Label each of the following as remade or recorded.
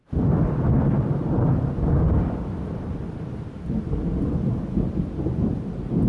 recorded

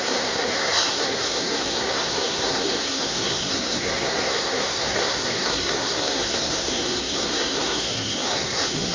remade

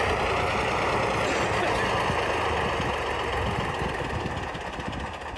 recorded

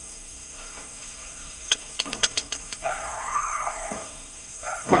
remade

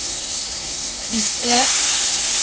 remade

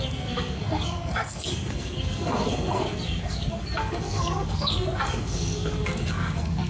remade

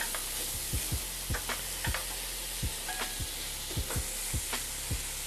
recorded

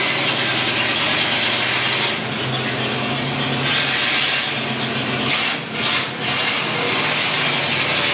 recorded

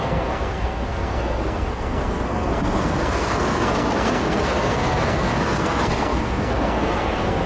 remade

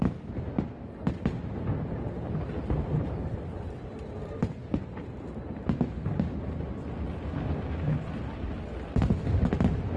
recorded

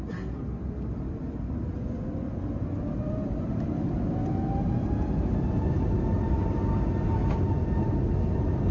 recorded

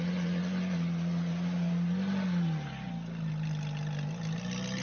recorded